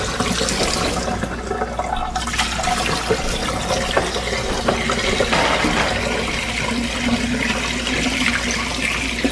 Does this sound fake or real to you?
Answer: real